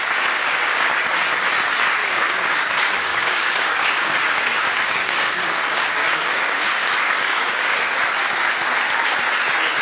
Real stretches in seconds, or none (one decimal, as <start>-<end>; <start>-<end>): 0.0-0.4; 0.9-2.0; 2.7-3.1; 8.0-9.8